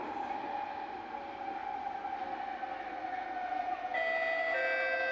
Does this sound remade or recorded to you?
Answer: recorded